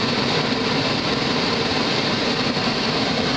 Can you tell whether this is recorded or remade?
remade